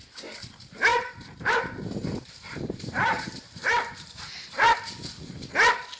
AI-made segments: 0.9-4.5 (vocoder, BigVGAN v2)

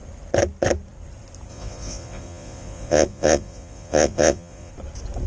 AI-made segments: 1.5-4.7 (vocoder, Vocos)

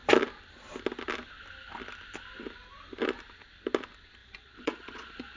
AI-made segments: 4.2-5.4 (vocoder, Vocos)

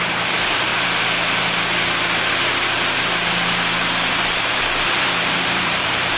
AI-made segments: 0.0-0.7 (vocoder, BigVGAN v2); 4.1-6.2

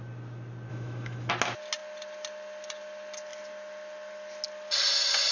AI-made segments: 0.7-1.3 (autoencoder, DAC-VAE)